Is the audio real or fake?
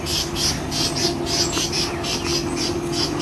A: real